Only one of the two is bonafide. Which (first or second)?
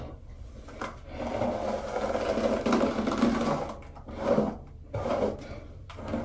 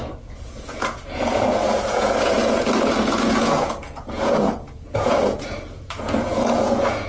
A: first